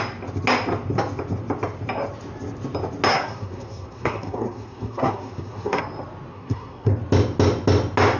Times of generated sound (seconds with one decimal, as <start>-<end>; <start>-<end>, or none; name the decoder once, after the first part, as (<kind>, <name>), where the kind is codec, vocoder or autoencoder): 3.1-5.8 (codec, SNAC); 6.3-6.9